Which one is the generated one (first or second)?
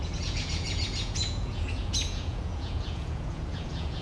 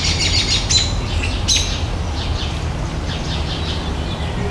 first